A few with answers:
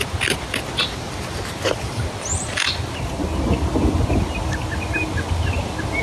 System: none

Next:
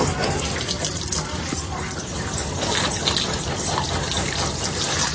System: none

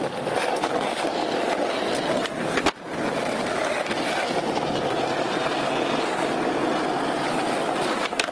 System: none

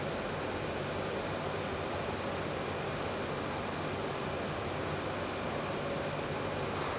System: none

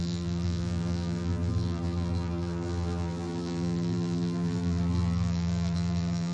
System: vocoder, BigVGAN v2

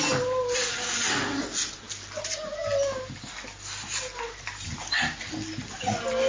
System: none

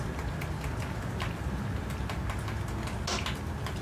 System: none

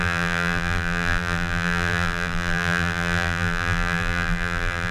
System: vocoder, BigVGAN v2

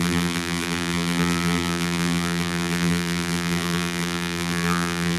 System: vocoder, BigVGAN v2